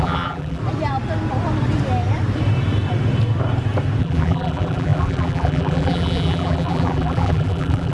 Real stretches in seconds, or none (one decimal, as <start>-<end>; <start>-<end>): 0.6-4.0